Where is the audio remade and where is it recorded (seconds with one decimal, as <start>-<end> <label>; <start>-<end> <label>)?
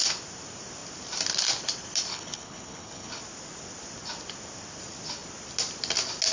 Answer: 0.0-2.1 recorded; 2.1-3.2 remade; 3.2-6.3 recorded